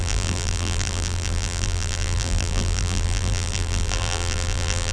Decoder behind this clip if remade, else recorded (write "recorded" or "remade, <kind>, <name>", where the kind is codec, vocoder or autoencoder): remade, vocoder, BigVGAN v2